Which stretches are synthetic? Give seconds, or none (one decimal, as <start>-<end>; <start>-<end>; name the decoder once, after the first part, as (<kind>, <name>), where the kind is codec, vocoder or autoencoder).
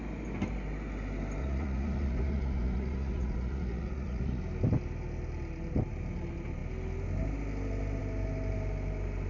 1.4-4.4 (vocoder, Vocos)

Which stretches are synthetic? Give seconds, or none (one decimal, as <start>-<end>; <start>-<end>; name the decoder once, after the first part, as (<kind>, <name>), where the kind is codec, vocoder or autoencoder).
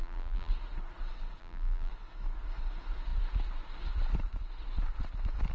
0.0-0.5 (vocoder, BigVGAN v2); 1.4-1.9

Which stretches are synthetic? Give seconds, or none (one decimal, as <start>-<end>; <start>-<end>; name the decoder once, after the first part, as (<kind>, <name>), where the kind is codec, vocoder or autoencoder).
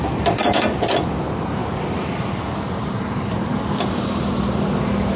1.6-4.7 (vocoder, BigVGAN v2)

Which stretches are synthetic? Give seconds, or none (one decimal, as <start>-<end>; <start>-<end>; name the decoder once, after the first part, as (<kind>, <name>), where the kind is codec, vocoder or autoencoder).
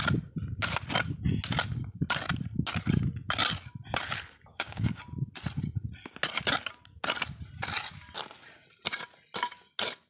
4.5-5.0 (codec, DAC)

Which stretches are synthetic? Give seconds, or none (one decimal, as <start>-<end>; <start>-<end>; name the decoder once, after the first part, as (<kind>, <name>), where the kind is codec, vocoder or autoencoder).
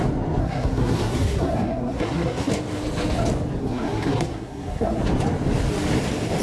0.4-2.5 (codec, SNAC); 3.6-5.0